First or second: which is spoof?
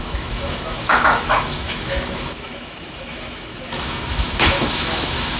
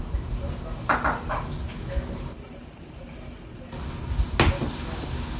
first